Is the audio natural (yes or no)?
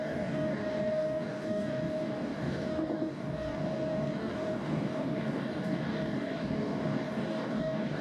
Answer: no